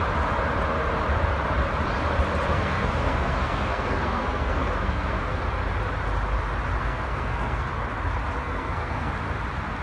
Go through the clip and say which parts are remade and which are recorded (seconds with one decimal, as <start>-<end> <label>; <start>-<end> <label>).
0.0-2.5 recorded; 2.5-5.4 remade; 5.4-6.8 recorded; 6.8-7.7 remade; 7.7-8.4 recorded; 8.4-9.1 remade; 9.1-9.8 recorded